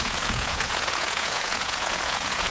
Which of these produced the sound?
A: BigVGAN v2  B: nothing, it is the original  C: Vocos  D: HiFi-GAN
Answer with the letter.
C